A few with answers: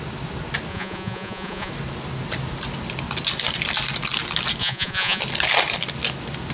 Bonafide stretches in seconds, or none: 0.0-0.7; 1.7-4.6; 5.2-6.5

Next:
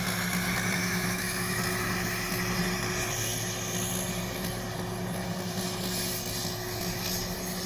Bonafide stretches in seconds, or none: 0.0-0.8; 1.6-7.7

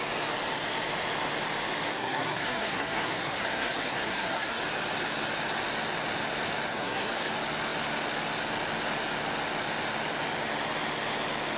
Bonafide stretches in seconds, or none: 0.0-1.9; 4.6-6.7; 7.3-11.6